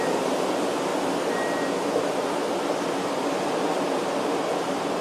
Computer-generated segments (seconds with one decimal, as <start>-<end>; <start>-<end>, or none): 0.0-0.9; 3.9-5.0